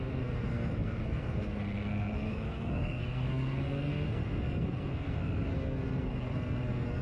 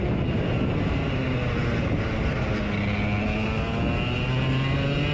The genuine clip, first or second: second